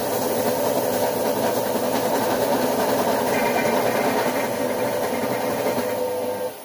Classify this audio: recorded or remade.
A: recorded